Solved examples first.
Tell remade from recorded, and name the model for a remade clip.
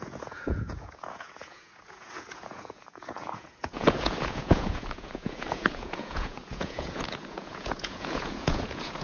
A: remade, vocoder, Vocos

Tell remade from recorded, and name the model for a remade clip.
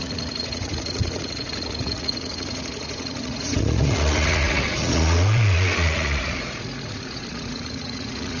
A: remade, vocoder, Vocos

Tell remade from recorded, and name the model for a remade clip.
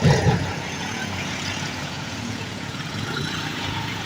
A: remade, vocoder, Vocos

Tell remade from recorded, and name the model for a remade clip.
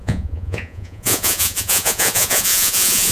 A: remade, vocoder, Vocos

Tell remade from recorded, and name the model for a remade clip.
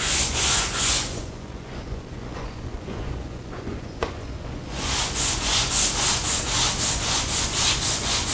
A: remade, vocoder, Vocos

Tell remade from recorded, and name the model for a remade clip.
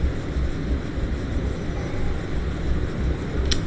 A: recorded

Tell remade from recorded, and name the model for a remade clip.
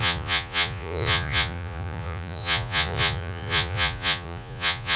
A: remade, vocoder, Vocos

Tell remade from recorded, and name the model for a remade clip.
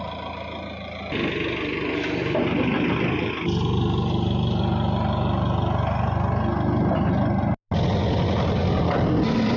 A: recorded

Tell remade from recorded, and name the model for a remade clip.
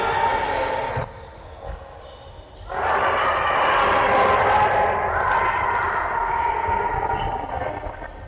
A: recorded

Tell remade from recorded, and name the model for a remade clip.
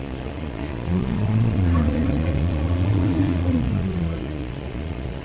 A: remade, vocoder, Vocos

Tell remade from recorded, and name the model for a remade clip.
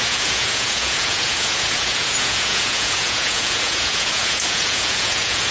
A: remade, vocoder, Vocos